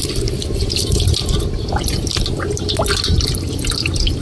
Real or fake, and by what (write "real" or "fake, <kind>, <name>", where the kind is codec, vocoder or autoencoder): real